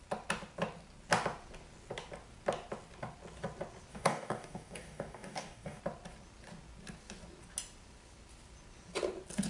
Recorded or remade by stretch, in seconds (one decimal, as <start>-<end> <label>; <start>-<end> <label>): 0.0-3.9 recorded; 3.9-5.8 remade; 5.8-9.5 recorded